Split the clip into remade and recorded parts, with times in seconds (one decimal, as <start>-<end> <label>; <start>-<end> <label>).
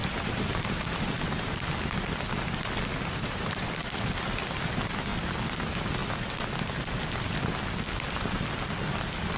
0.0-1.7 remade; 1.7-2.9 recorded; 2.9-3.8 remade; 3.8-9.4 recorded